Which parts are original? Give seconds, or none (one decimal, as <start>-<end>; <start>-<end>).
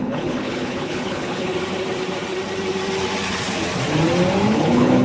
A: 1.5-4.5